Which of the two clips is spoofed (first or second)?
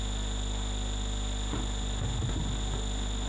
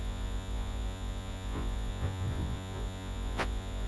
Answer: second